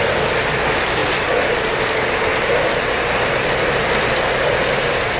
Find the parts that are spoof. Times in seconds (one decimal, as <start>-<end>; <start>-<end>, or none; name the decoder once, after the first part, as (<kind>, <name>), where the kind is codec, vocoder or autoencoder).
none